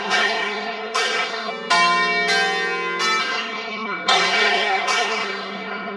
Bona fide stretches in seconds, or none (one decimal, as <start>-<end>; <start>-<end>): 1.5-3.2